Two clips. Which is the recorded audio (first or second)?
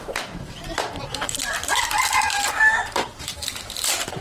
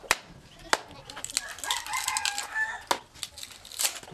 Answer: second